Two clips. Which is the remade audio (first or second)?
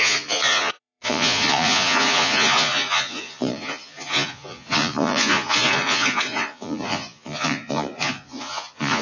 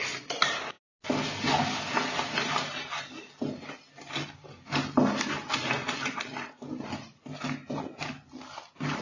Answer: first